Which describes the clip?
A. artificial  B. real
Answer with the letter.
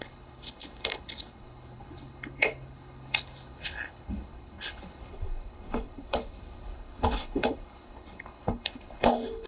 A